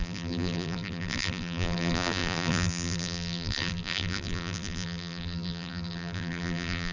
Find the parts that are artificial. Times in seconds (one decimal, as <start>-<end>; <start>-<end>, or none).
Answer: 0.0-6.9